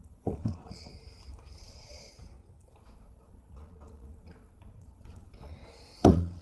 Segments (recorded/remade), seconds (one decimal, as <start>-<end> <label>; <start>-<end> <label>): 0.0-0.9 remade; 0.9-1.6 recorded; 1.6-2.1 remade; 2.1-2.7 recorded; 2.7-5.5 remade; 5.5-6.0 recorded; 6.0-6.4 remade